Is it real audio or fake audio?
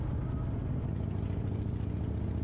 real